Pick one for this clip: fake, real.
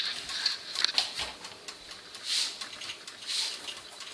real